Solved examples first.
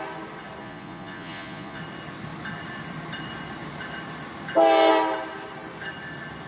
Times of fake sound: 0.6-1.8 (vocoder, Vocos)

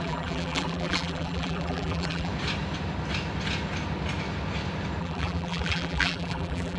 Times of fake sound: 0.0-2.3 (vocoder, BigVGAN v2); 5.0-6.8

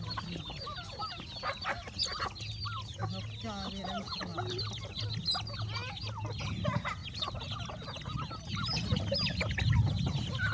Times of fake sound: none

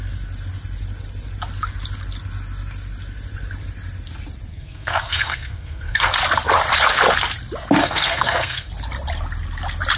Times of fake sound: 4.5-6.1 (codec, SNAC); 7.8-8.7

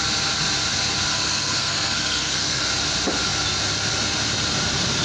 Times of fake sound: 1.1-2.6 (codec, SNAC)

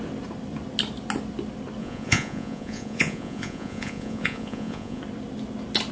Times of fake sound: 1.8-5.0 (vocoder, Vocos)

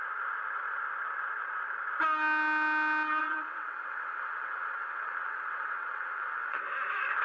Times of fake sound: 3.2-6.6 (vocoder, WaveNeXt)